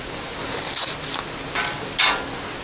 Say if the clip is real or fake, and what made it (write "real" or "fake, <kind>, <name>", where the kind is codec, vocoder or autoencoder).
real